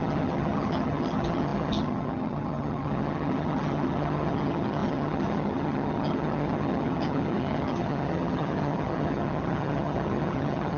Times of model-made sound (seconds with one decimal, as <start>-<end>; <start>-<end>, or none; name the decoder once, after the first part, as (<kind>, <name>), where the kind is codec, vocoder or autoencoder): 0.0-10.8 (vocoder, HiFi-GAN)